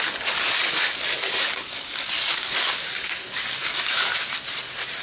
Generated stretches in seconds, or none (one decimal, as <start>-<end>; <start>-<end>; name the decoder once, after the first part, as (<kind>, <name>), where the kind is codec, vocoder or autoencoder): 0.0-4.1 (codec, DAC)